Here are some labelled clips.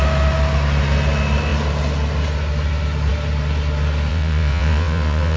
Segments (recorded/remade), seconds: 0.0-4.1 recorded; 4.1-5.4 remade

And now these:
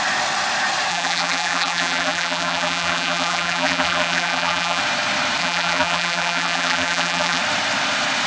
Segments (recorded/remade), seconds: 0.0-0.9 recorded; 0.9-4.8 remade; 4.8-5.4 recorded; 5.4-7.4 remade; 7.4-8.3 recorded

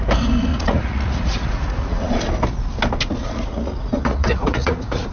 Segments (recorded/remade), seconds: 0.0-0.5 recorded; 0.5-2.1 remade; 2.1-3.2 recorded; 3.2-5.1 remade

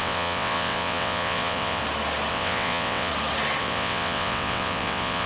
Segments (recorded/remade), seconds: 0.0-1.8 remade; 1.8-2.3 recorded; 2.3-3.1 remade; 3.1-3.6 recorded; 3.6-5.3 remade